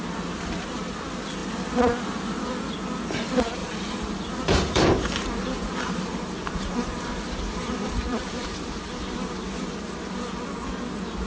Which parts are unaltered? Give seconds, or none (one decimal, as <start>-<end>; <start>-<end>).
0.0-3.6; 8.8-11.3